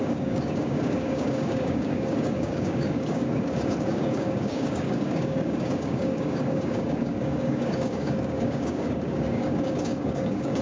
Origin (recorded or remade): remade